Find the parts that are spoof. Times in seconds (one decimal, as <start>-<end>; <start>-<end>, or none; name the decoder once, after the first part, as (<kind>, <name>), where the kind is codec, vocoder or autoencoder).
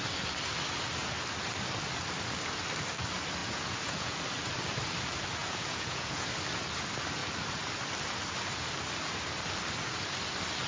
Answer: 3.4-4.2 (vocoder, Vocos); 5.4-6.3